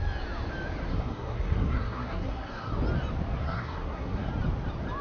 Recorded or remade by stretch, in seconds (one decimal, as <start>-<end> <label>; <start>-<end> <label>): 0.0-0.9 recorded; 0.9-2.7 remade; 2.7-3.4 recorded; 3.4-4.3 remade; 4.3-5.0 recorded